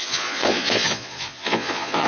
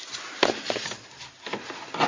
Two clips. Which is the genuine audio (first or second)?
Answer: second